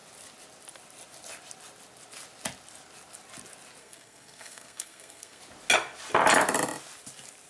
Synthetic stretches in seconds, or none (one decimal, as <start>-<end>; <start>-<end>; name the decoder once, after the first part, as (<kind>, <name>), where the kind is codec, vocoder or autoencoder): 3.8-5.4 (codec, SNAC)